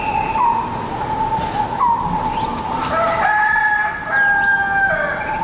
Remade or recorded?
recorded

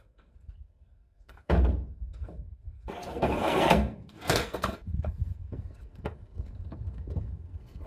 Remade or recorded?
remade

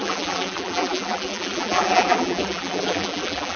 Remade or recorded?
remade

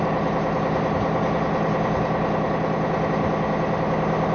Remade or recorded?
recorded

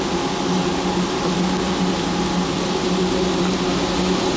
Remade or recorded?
recorded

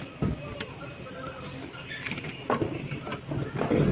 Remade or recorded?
recorded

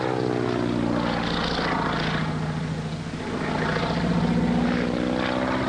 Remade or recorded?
recorded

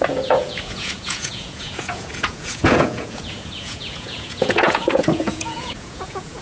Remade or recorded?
remade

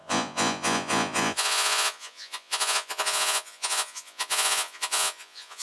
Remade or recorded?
remade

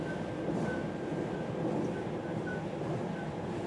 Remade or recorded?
recorded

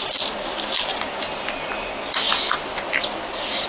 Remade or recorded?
recorded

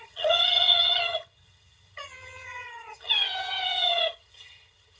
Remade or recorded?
remade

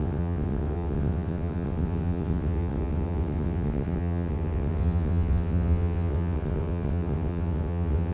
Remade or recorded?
remade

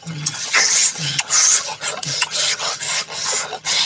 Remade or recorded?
remade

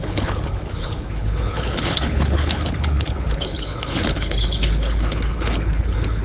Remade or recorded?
remade